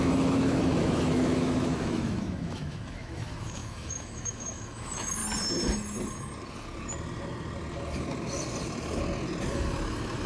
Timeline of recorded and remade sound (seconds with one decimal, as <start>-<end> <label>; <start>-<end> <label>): 0.0-5.2 remade; 5.2-9.5 recorded; 9.5-10.3 remade